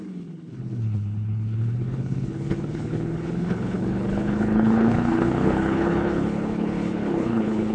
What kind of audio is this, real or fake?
fake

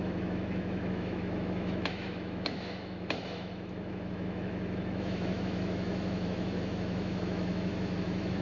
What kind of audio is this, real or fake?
fake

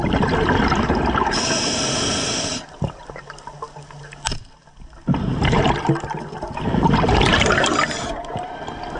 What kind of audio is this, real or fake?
real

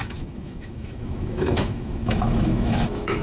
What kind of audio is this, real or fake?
fake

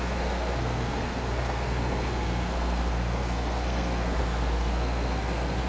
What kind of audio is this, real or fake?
fake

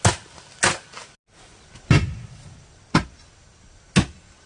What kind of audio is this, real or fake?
real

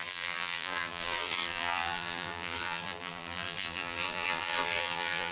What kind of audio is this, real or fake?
fake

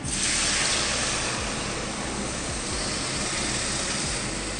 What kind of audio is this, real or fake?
real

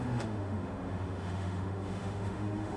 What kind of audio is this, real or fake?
fake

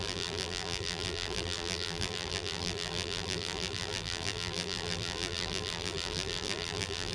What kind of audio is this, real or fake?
fake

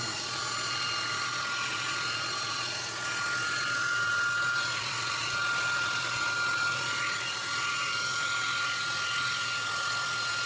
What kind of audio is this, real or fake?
real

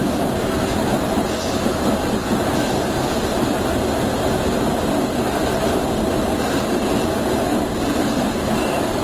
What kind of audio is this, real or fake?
real